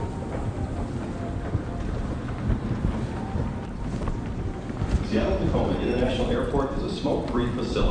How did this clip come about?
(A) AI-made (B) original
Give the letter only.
A